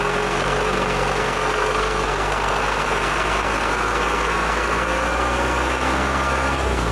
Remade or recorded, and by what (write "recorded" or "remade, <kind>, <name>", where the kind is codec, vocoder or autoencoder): remade, codec, SNAC